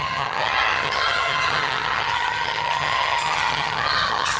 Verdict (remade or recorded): remade